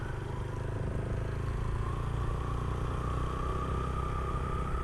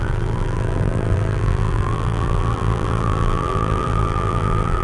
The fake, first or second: second